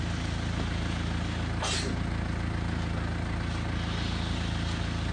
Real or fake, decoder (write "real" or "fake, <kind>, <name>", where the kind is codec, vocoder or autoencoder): real